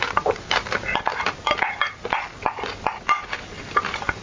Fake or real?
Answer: real